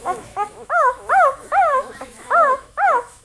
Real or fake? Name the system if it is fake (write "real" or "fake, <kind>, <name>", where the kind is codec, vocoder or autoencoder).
fake, autoencoder, DAC-VAE